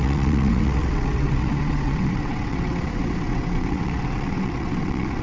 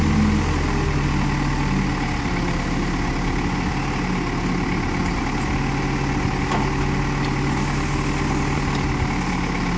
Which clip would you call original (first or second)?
second